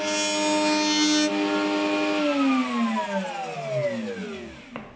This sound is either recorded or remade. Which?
recorded